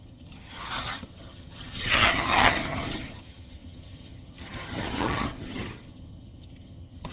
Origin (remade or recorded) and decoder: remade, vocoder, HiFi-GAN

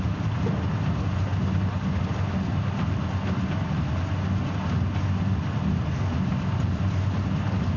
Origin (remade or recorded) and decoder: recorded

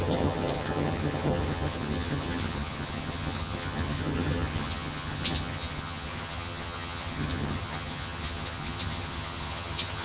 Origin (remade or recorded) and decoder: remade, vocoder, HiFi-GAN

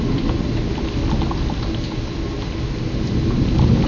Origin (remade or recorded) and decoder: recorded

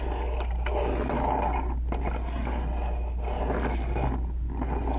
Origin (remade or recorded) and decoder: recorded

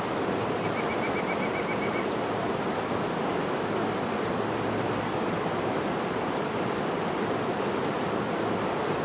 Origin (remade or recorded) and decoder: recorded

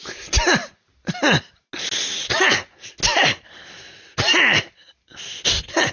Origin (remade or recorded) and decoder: recorded